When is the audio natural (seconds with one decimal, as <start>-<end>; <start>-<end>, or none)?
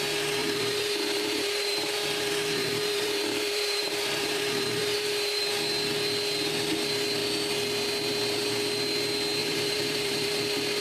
0.0-0.4; 5.5-9.4; 10.4-10.8